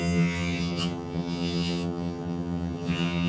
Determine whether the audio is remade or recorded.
remade